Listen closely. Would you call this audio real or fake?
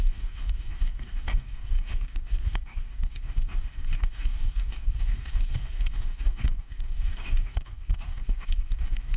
fake